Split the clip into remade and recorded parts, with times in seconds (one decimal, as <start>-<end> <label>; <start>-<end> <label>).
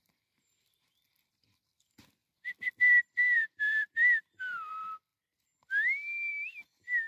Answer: 0.0-5.1 remade; 5.1-6.3 recorded; 6.3-7.1 remade